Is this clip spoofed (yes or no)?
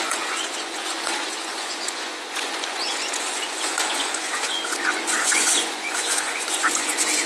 yes